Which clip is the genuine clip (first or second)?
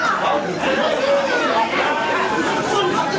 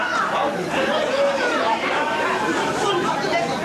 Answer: first